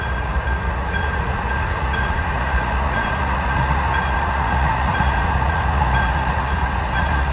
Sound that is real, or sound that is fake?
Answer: fake